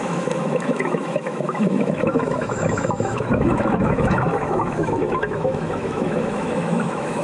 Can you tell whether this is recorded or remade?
remade